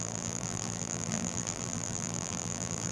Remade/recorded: remade